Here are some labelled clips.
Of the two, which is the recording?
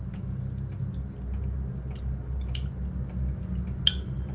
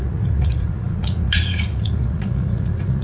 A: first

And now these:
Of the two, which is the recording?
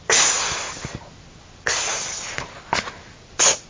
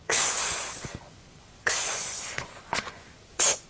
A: first